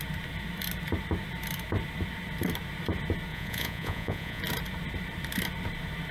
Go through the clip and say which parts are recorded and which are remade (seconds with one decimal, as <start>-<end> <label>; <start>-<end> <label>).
0.0-3.3 recorded; 3.3-4.4 remade; 4.4-6.1 recorded